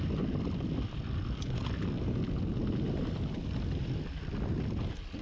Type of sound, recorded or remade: recorded